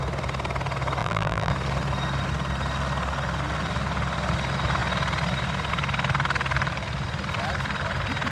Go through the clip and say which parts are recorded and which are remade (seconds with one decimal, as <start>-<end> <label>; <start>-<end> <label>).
0.0-1.0 recorded; 1.0-1.5 remade; 1.5-8.3 recorded